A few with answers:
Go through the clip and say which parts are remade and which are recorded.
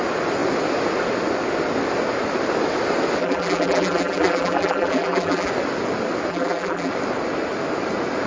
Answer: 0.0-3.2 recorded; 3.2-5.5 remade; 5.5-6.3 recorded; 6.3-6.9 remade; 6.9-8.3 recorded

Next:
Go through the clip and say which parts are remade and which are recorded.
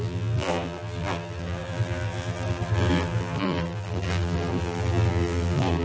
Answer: 0.0-5.8 remade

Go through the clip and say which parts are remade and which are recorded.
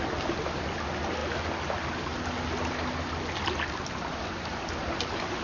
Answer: 0.0-5.4 recorded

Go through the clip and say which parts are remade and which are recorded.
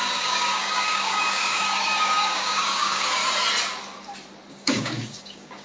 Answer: 0.0-3.2 remade; 3.2-4.5 recorded; 4.5-5.6 remade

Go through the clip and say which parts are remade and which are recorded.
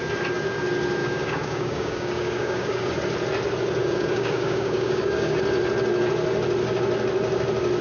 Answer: 0.0-1.0 recorded; 1.0-2.9 remade; 2.9-3.8 recorded; 3.8-5.4 remade; 5.4-7.8 recorded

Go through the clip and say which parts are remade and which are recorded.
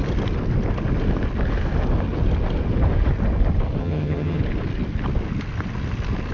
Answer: 0.0-3.8 recorded; 3.8-4.4 remade; 4.4-6.3 recorded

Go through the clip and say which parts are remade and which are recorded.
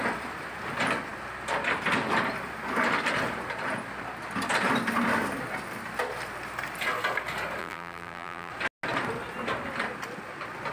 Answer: 0.0-7.6 recorded; 7.6-8.5 remade; 8.5-10.7 recorded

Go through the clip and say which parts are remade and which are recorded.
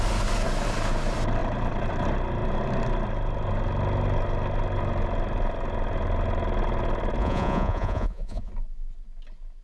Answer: 0.0-7.2 recorded; 7.2-8.5 remade; 8.5-9.6 recorded